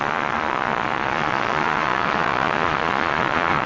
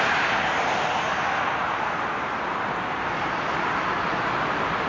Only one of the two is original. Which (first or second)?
second